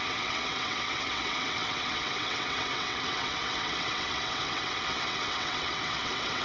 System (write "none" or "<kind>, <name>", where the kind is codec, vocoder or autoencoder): vocoder, WaveNeXt